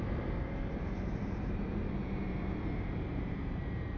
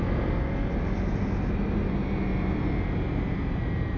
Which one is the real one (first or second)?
second